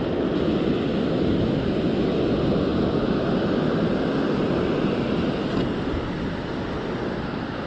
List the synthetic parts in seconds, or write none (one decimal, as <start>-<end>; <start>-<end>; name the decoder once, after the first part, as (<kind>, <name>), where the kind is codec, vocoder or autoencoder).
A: none